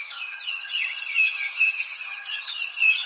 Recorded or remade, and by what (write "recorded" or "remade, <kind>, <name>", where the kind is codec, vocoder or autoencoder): remade, vocoder, HiFi-GAN